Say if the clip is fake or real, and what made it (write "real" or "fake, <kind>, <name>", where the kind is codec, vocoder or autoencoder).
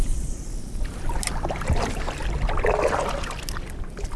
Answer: real